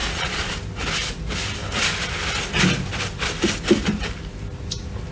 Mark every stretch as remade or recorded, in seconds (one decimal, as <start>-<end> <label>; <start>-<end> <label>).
0.0-0.5 remade; 0.5-5.1 recorded

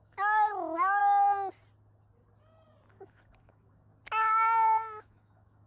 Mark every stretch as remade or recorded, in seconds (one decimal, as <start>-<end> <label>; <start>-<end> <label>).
0.0-1.0 remade; 1.0-2.9 recorded; 2.9-3.9 remade; 3.9-5.0 recorded; 5.0-5.7 remade

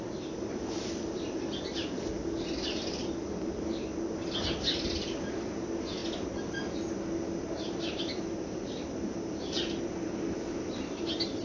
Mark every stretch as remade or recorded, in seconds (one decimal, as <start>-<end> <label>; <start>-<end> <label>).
0.0-11.4 recorded

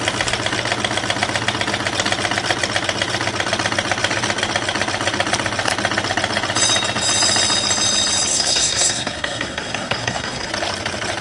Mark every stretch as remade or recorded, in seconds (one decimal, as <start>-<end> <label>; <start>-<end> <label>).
0.0-8.3 recorded; 8.3-10.5 remade; 10.5-11.2 recorded

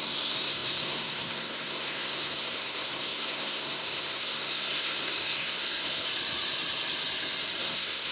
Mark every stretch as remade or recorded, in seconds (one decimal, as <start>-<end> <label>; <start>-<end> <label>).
0.0-6.1 remade; 6.1-7.6 recorded; 7.6-8.1 remade

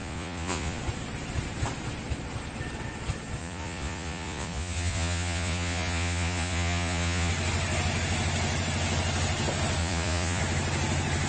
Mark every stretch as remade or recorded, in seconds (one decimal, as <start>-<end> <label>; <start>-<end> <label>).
0.0-0.8 remade; 0.8-3.4 recorded; 3.4-7.3 remade; 7.3-9.8 recorded; 9.8-10.4 remade; 10.4-11.3 recorded

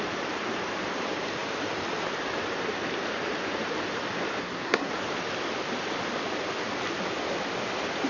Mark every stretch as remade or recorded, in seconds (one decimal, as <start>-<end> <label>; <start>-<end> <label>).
0.0-4.4 recorded; 4.4-4.9 remade; 4.9-8.1 recorded